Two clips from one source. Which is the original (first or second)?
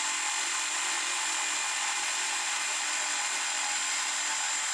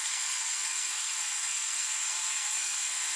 first